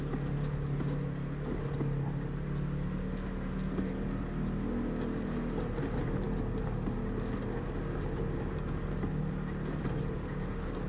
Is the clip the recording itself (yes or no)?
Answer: yes